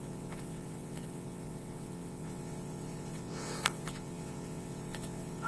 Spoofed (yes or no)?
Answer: yes